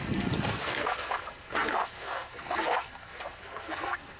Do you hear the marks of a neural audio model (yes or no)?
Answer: yes